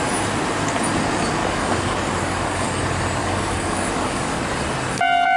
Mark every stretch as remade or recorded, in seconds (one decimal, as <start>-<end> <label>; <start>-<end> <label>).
0.0-1.4 recorded; 1.4-2.8 remade; 2.8-3.2 recorded; 3.2-4.4 remade; 4.4-5.4 recorded